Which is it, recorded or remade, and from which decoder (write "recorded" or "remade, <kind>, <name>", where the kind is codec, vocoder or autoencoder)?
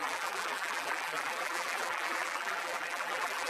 remade, vocoder, BigVGAN v2